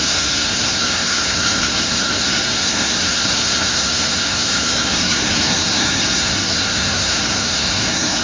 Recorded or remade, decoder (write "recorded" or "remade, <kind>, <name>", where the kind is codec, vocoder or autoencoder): remade, codec, SNAC